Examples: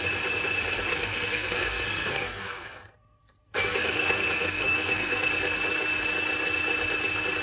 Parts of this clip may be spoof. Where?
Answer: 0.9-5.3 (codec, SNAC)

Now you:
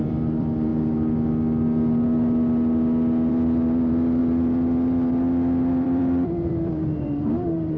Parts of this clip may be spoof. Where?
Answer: 0.0-0.7 (vocoder, BigVGAN v2); 3.3-7.8